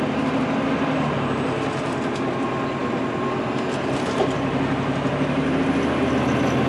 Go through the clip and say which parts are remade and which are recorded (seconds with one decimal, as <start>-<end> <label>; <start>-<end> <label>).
0.0-6.7 recorded